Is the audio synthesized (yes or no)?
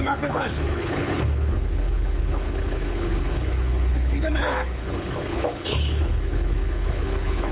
yes